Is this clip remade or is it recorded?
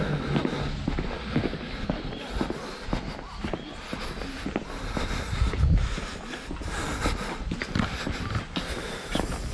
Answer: recorded